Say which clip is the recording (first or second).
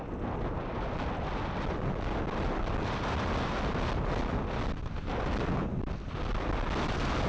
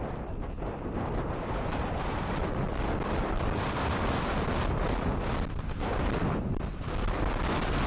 first